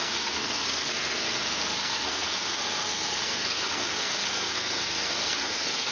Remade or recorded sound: remade